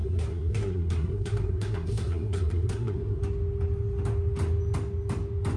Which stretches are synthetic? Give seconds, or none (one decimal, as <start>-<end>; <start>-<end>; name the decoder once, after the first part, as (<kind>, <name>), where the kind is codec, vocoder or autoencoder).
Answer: 0.0-3.2 (codec, SNAC)